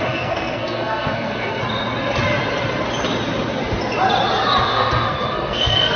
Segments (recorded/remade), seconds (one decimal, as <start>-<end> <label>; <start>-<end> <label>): 0.0-1.6 remade; 1.6-4.6 recorded; 4.6-6.0 remade